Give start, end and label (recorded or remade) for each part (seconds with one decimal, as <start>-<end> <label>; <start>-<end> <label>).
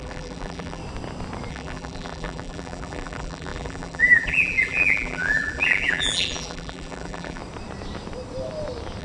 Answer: 0.0-0.8 remade; 0.8-1.5 recorded; 1.5-7.4 remade; 7.4-9.0 recorded